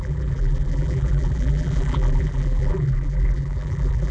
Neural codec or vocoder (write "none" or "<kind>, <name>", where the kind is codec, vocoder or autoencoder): vocoder, BigVGAN v2